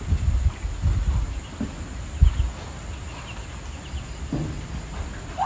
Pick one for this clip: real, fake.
real